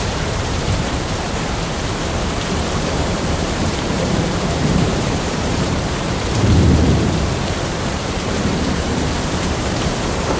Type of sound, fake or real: fake